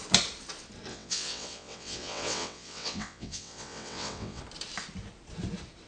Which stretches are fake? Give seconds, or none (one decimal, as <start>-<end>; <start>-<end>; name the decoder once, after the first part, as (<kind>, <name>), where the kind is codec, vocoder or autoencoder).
0.9-4.4 (vocoder, WaveNeXt)